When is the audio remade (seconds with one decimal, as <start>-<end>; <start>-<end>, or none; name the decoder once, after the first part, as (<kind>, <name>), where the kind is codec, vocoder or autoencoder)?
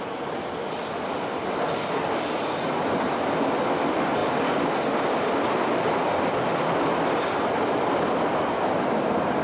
none